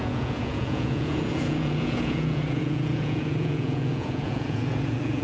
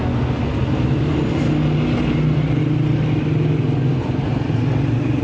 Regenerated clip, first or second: first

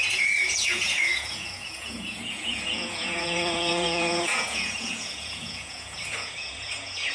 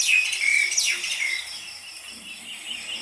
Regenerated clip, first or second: first